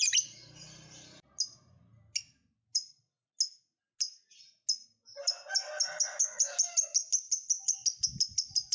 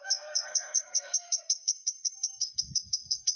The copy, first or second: second